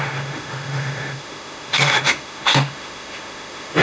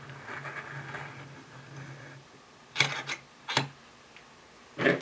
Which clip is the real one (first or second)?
second